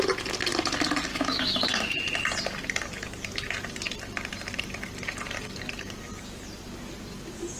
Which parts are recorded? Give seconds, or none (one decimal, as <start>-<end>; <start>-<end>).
0.0-1.1; 2.0-7.6